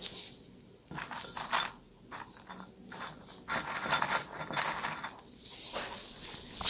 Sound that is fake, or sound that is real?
real